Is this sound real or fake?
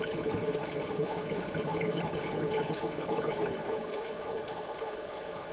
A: fake